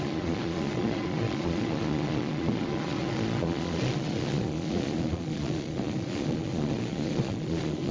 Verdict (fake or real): fake